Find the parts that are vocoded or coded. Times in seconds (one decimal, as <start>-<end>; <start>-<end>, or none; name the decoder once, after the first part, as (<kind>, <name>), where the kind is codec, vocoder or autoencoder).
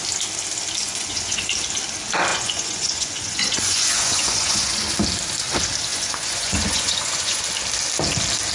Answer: 0.8-1.4 (vocoder, Vocos); 2.3-4.8; 5.9-7.4